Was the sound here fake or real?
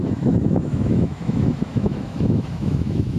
fake